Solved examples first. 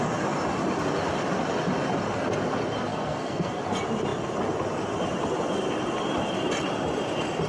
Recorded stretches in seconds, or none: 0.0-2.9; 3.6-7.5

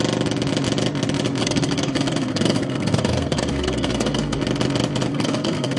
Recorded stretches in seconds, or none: 0.0-1.4; 4.4-5.1

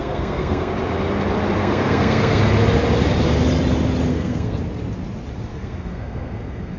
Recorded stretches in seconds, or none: 0.7-1.6; 2.4-4.1; 4.6-5.5

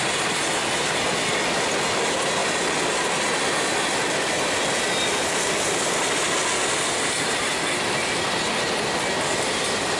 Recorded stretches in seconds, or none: 0.0-10.0

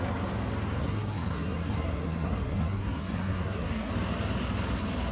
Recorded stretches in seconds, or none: 0.0-0.8; 3.9-5.1

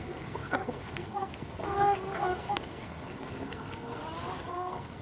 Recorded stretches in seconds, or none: 4.0-4.5

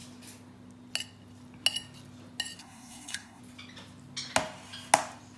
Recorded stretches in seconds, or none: 0.0-2.6; 3.4-5.4